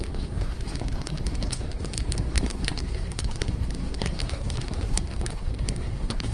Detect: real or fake fake